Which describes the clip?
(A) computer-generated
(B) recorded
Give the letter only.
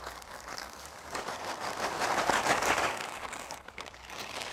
A